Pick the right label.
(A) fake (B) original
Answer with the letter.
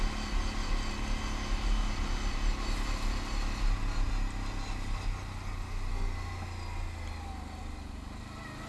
B